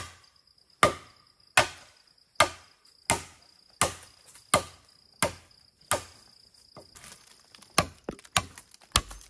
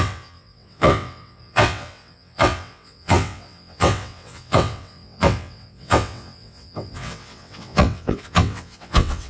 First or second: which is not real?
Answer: second